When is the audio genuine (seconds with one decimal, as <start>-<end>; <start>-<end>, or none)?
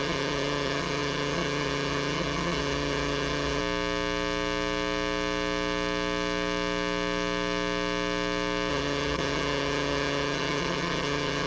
3.6-8.7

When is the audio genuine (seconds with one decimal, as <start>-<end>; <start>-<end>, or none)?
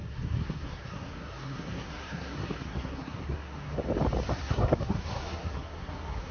3.8-4.3